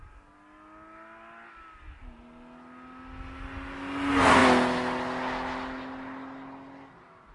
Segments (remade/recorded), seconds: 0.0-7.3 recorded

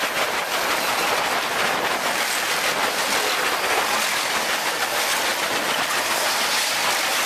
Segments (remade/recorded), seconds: 0.0-5.3 recorded; 5.3-5.9 remade; 5.9-7.3 recorded

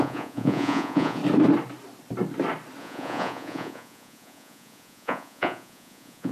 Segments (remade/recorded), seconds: 0.0-1.2 remade; 1.2-2.8 recorded; 2.8-6.3 remade

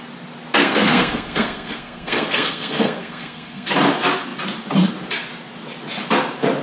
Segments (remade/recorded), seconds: 0.0-0.6 recorded; 0.6-3.7 remade; 3.7-6.6 recorded

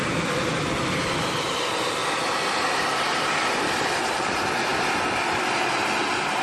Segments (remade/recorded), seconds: 0.0-6.4 recorded